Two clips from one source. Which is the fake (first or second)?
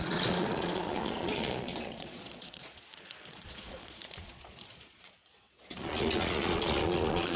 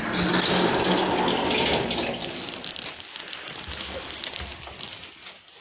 first